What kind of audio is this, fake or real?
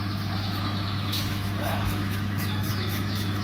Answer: fake